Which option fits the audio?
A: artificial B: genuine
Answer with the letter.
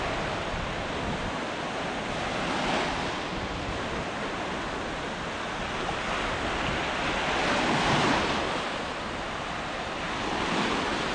B